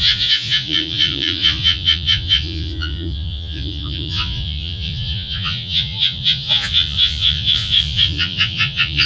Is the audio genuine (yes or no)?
no